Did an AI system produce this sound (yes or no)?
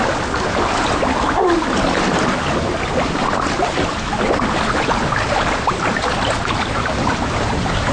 no